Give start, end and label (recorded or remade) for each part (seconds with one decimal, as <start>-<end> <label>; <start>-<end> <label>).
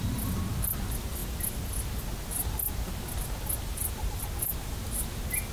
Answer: 0.0-5.5 recorded